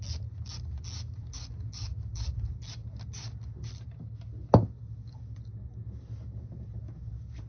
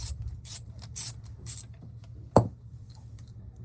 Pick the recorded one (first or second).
first